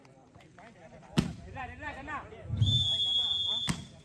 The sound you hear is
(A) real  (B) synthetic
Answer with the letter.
B